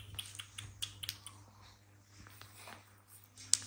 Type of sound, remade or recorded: recorded